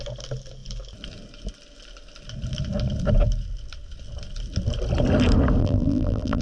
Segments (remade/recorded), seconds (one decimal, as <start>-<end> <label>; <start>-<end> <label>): 0.0-5.6 recorded; 5.6-6.4 remade